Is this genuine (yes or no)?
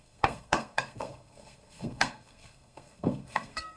no